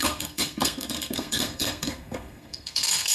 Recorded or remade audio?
remade